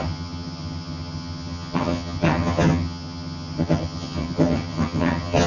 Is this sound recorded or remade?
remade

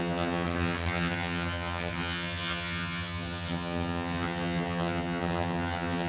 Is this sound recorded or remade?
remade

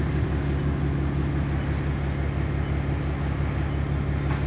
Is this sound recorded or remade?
recorded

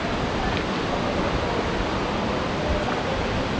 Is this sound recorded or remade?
recorded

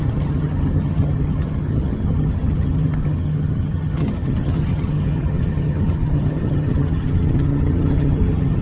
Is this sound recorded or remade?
remade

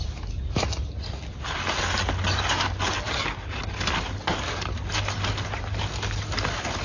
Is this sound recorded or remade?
recorded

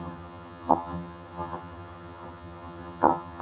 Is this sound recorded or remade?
remade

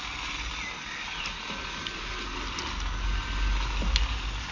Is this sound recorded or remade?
recorded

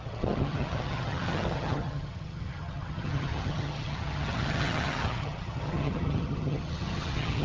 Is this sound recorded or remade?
remade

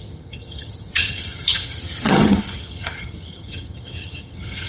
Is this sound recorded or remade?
remade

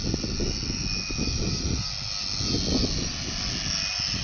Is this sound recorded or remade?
recorded